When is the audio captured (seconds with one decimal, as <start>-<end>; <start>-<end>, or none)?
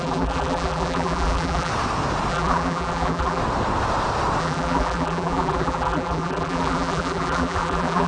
1.7-2.3; 3.4-4.4